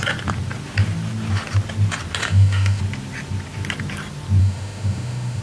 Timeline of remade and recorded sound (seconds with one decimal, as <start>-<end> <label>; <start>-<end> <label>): 0.0-2.2 recorded; 2.2-2.8 remade; 2.8-4.4 recorded; 4.4-5.4 remade